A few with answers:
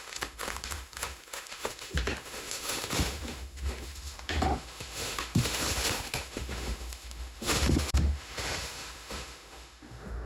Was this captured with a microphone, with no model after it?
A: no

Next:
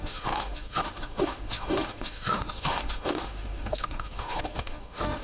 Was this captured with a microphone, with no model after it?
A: no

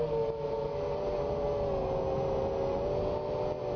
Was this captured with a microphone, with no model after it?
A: yes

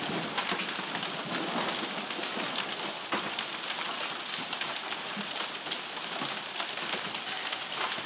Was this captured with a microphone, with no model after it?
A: yes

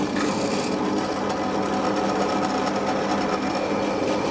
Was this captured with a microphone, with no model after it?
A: yes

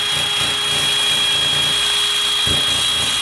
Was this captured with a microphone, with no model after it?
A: yes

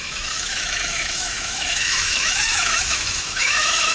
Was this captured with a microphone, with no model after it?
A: no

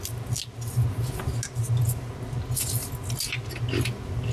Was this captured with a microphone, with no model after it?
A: yes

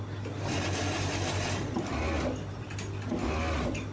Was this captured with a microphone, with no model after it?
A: yes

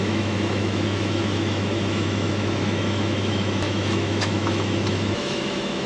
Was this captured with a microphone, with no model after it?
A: no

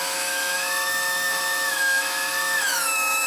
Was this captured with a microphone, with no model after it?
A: no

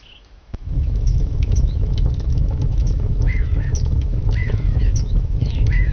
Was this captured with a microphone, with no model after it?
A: no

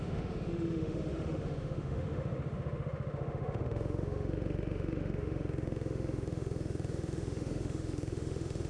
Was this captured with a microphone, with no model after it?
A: no